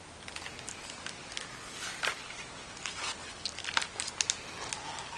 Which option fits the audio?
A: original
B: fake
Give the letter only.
A